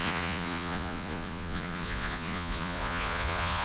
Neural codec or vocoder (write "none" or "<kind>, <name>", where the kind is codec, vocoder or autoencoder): vocoder, Vocos